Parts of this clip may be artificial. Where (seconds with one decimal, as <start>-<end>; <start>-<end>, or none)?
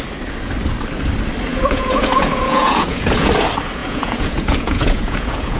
1.5-3.3; 3.8-5.6